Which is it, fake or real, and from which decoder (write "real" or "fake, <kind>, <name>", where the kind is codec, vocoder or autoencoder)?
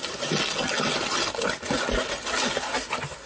real